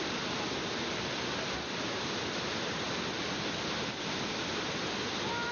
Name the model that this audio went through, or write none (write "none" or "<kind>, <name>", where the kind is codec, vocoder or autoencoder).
none